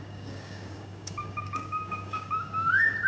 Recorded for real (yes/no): no